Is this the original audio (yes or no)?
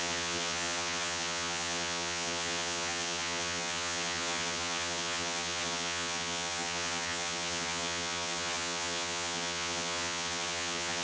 no